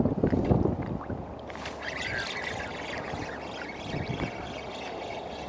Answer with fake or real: real